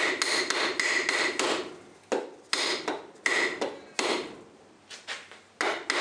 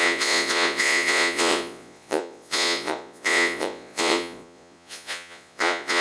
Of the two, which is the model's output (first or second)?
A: second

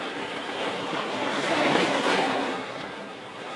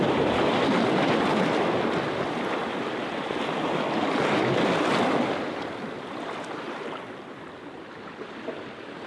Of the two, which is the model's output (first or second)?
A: first